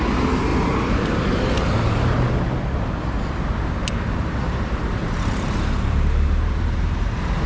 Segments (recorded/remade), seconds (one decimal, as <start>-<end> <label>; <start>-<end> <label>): 0.0-0.5 recorded; 0.5-2.3 remade; 2.3-5.0 recorded; 5.0-7.5 remade